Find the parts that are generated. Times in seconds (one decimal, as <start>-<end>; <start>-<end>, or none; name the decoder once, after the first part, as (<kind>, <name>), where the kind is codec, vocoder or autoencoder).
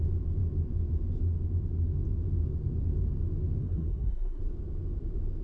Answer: 3.6-4.4 (codec, SNAC)